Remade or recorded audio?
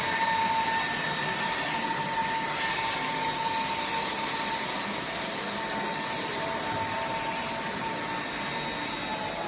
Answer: recorded